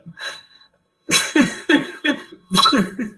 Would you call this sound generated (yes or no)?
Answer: yes